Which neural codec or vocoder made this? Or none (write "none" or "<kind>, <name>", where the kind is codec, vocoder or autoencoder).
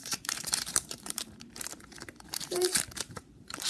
vocoder, BigVGAN v2